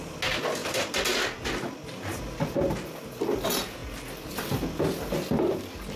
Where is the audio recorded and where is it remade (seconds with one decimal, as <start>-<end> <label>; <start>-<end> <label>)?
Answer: 0.0-6.0 recorded